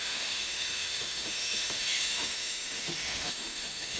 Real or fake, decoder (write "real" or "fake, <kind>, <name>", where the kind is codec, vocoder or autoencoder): fake, autoencoder, DAC-VAE